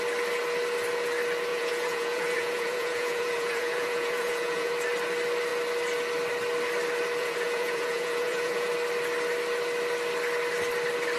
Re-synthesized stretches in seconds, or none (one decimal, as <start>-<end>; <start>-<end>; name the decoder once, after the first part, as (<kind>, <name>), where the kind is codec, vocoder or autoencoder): 1.5-4.7 (vocoder, Vocos); 7.2-8.7

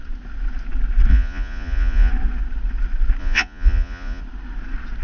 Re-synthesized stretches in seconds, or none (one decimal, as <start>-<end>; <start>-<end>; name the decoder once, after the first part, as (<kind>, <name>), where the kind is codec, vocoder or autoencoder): 1.1-2.1 (vocoder, Vocos); 3.2-4.2